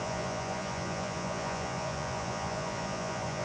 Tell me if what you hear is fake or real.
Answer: fake